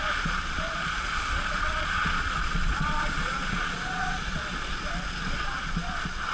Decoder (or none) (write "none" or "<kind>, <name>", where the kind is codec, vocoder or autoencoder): vocoder, Vocos